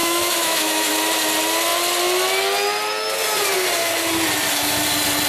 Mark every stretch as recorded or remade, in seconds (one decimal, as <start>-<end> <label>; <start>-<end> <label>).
0.0-0.9 remade; 0.9-5.3 recorded